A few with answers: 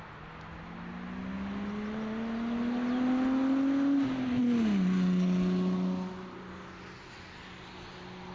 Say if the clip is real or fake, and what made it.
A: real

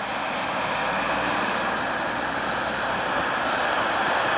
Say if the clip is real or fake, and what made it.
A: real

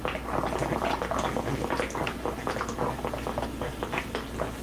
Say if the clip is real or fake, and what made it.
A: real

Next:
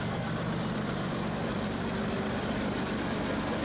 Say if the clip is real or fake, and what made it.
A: real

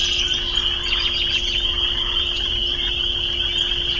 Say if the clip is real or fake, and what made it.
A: real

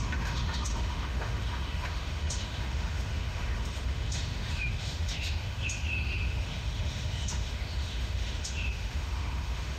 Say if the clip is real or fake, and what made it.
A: fake, autoencoder, DAC-VAE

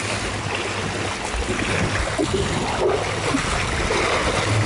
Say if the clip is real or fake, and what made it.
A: real